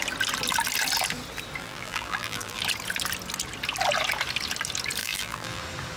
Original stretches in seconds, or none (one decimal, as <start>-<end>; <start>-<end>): 0.0-1.6; 2.6-5.0; 5.6-6.0